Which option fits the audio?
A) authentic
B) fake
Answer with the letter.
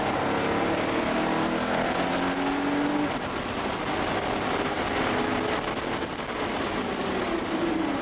A